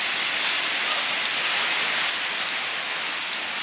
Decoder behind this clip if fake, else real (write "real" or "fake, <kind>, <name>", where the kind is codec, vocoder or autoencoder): real